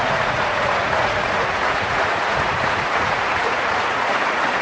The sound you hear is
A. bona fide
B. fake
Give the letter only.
B